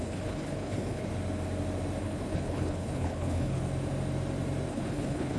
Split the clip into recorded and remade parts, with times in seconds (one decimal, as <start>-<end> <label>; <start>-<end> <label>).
0.0-1.1 remade; 1.1-2.0 recorded; 2.0-3.6 remade; 3.6-4.7 recorded; 4.7-5.4 remade